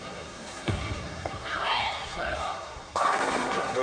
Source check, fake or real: fake